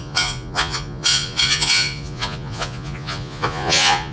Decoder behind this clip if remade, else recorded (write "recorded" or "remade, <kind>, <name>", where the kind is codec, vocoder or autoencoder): remade, vocoder, Vocos